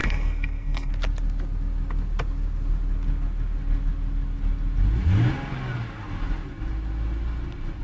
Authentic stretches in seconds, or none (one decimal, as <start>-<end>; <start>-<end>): 0.9-7.8